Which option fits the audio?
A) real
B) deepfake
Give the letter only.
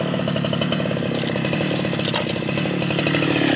A